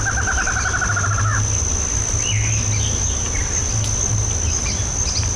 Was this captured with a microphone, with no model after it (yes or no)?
yes